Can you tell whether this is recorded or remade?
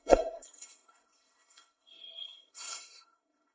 remade